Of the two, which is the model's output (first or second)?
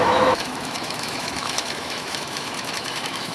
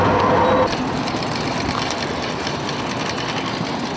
first